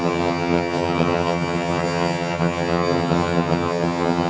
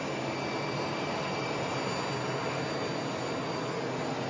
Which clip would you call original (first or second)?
second